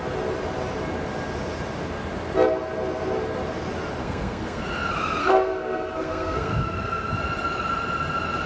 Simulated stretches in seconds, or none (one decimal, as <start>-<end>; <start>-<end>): 4.0-4.6; 5.2-7.2